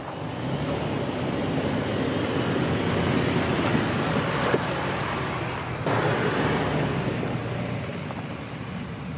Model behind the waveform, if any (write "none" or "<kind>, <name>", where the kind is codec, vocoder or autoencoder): none